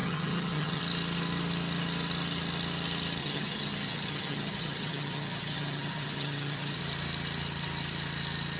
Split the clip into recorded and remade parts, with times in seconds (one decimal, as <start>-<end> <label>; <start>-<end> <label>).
0.0-0.8 remade; 0.8-3.2 recorded; 3.2-6.8 remade; 6.8-8.6 recorded